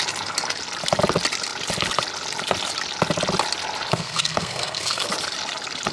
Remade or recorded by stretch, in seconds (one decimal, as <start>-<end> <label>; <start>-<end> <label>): 0.0-3.9 recorded; 3.9-5.1 remade; 5.1-5.9 recorded